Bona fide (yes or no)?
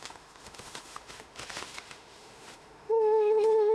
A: no